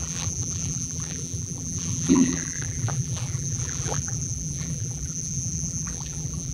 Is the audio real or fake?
fake